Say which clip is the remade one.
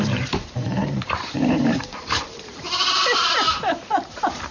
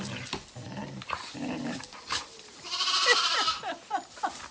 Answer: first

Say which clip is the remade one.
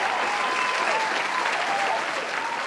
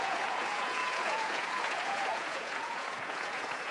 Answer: second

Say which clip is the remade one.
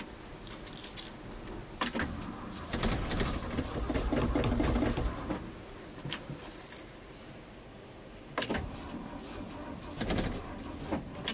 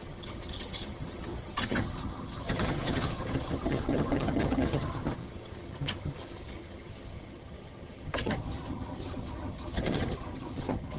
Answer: second